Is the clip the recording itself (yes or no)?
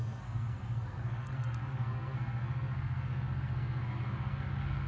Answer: no